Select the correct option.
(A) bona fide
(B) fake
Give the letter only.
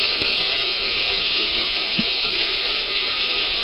B